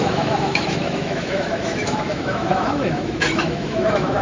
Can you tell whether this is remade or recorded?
remade